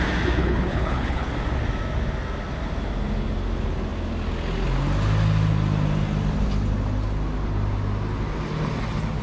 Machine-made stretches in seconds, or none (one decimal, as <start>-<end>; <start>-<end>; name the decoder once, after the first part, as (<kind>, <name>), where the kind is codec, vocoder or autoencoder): 0.4-1.3 (codec, HILCodec)